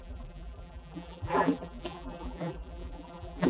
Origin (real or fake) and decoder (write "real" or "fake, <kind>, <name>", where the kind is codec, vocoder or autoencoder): fake, vocoder, BigVGAN v2